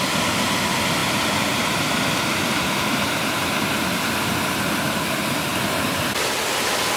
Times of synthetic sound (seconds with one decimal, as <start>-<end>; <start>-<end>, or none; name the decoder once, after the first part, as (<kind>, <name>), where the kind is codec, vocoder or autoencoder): 1.0-3.5 (vocoder, BigVGAN v2)